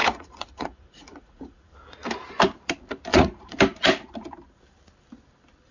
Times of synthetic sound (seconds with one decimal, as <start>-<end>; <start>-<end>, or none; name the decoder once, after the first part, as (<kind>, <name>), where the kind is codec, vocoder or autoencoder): 0.0-1.7 (vocoder, Vocos); 3.1-3.6

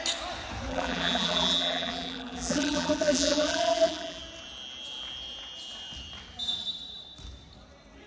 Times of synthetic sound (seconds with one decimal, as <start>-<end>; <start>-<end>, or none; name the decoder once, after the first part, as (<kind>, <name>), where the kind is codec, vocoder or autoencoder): 0.7-4.2 (vocoder, BigVGAN v2)

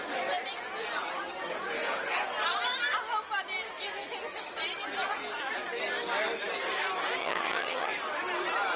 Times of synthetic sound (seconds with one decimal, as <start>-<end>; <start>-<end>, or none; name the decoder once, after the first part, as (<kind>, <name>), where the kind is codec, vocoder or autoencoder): 7.2-7.9 (vocoder, HiFi-GAN)

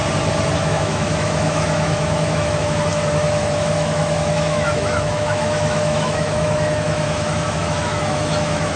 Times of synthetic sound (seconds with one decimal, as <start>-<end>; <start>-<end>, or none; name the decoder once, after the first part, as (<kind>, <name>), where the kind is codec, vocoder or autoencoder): 0.6-8.8 (autoencoder, DAC-VAE)

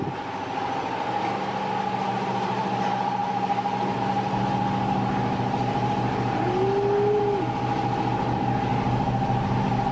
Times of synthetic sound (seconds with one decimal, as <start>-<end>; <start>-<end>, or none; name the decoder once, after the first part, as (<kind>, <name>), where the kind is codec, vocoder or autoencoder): none

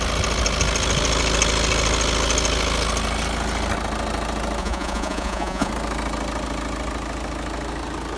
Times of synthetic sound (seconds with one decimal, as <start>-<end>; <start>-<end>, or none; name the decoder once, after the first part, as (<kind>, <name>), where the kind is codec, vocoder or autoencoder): 4.6-5.7 (vocoder, Vocos)

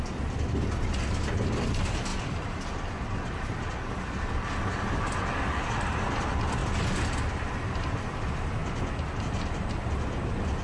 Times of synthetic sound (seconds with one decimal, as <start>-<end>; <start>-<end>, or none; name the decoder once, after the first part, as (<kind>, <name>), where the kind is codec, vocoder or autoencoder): none

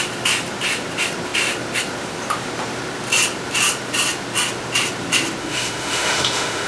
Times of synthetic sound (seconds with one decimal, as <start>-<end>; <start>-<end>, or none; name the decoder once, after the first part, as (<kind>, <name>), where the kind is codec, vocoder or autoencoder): 5.4-6.7 (autoencoder, DAC-VAE)